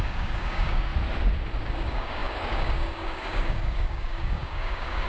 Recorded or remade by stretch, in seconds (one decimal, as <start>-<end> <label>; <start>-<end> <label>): 0.0-0.9 remade; 0.9-1.6 recorded; 1.6-5.1 remade